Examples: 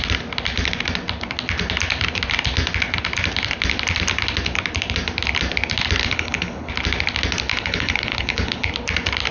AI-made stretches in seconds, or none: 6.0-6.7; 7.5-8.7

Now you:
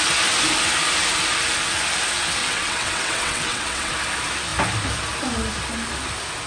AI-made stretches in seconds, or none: 2.4-3.9

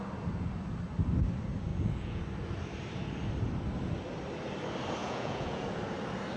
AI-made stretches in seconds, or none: 1.7-2.2; 5.0-5.8

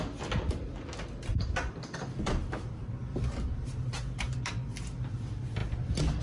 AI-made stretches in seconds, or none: 1.3-3.0

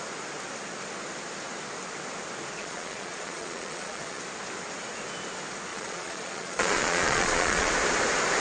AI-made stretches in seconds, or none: 2.6-4.2; 5.7-7.7

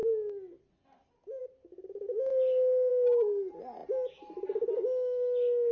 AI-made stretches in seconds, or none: none